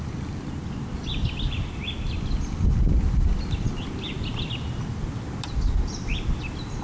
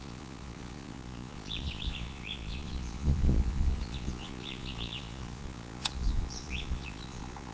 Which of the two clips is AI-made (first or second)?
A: second